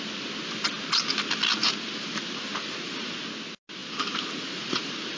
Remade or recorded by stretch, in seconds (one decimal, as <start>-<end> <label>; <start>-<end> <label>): 0.0-1.6 recorded; 1.6-3.2 remade; 3.2-3.8 recorded; 3.8-5.2 remade